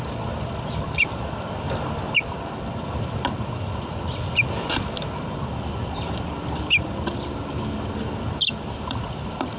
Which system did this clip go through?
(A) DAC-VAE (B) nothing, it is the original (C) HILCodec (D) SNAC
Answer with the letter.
B